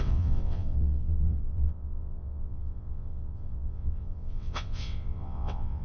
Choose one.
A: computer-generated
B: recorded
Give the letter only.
A